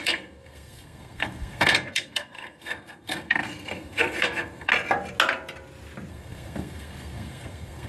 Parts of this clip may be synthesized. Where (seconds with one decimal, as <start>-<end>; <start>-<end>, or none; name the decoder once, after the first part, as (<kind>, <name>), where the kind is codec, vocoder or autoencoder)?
0.0-4.7 (codec, SNAC); 6.1-7.9